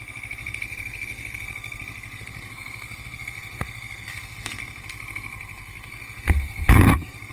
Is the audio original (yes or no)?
no